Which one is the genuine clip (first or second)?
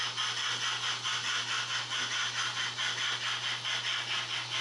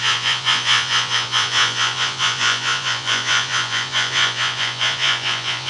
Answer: first